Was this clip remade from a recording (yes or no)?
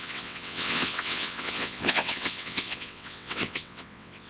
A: yes